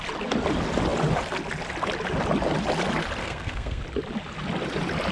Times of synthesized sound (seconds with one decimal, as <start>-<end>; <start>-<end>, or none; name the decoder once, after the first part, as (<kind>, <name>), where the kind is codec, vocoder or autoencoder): 3.2-3.8 (codec, SNAC)